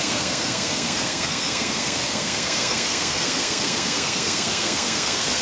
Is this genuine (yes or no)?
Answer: no